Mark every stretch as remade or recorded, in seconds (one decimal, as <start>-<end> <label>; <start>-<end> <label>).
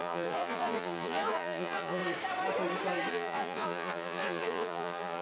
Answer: 0.0-2.0 remade; 2.0-3.1 recorded; 3.1-5.2 remade